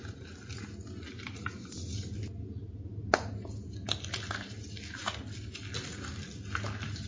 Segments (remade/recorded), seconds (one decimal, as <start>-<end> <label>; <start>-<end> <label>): 0.0-7.1 recorded